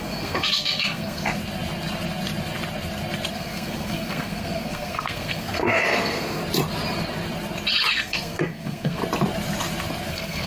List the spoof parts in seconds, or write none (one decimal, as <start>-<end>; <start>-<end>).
0.0-1.4; 3.3-6.4; 7.9-9.0; 10.1-10.5